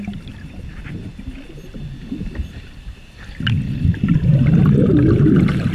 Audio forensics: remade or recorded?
remade